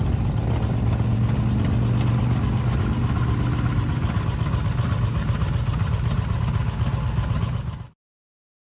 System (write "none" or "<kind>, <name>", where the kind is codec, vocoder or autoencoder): none